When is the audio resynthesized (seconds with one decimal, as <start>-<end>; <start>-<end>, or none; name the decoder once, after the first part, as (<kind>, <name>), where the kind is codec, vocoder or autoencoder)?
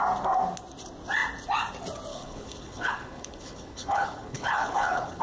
2.1-5.2 (codec, HILCodec)